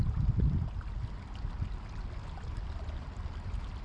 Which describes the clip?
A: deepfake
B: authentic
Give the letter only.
B